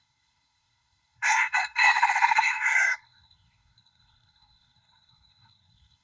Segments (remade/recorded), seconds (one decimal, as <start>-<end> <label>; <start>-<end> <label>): 0.0-6.0 remade